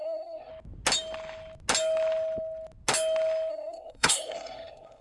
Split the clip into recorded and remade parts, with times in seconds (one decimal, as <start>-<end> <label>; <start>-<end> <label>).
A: 0.0-0.5 remade; 0.5-3.5 recorded; 3.5-5.0 remade